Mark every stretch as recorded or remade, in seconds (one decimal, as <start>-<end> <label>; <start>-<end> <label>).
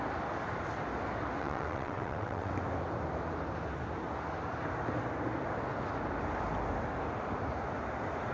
0.0-1.4 recorded; 1.4-2.5 remade; 2.5-8.3 recorded